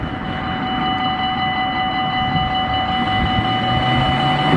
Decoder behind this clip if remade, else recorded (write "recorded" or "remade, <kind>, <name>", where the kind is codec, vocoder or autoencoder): recorded